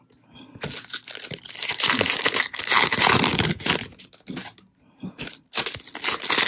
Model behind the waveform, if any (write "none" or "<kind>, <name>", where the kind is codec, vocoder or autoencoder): none